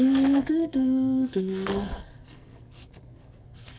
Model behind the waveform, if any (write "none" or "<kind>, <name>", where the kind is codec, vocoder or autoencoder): codec, SNAC